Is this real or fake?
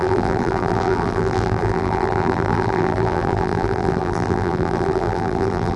fake